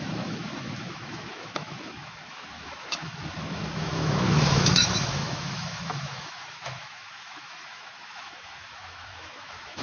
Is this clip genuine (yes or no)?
no